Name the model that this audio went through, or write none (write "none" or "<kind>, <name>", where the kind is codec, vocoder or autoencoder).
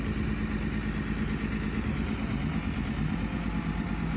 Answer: none